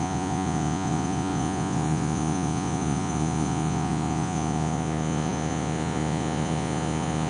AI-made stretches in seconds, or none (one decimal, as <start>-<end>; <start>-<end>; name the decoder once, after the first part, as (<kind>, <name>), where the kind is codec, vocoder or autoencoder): 0.0-7.3 (vocoder, Vocos)

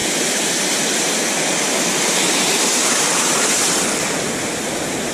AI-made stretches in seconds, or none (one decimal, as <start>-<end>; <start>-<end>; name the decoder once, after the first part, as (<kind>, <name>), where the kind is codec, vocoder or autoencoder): 2.8-3.8 (vocoder, BigVGAN v2)

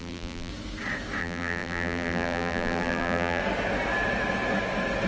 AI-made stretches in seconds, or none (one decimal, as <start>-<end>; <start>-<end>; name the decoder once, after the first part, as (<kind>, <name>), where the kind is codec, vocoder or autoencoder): 0.0-0.5 (vocoder, BigVGAN v2); 1.2-3.4

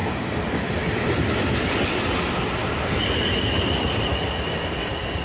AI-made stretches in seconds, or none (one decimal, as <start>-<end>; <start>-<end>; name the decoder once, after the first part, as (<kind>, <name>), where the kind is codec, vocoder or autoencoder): none

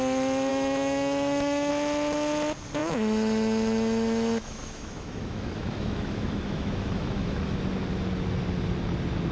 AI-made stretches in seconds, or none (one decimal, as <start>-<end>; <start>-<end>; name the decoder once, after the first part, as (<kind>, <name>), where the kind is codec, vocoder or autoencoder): 0.5-1.7 (autoencoder, DAC-VAE); 2.8-7.6

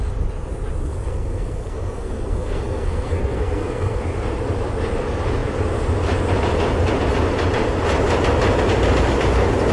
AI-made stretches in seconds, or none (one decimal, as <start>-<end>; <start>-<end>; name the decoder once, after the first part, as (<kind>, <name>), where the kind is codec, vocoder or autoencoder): 0.8-4.0 (codec, SNAC)

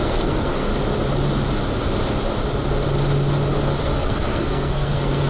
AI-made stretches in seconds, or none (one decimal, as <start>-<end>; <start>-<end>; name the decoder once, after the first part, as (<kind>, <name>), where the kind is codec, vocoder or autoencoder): 0.0-0.7 (codec, SNAC); 3.8-5.3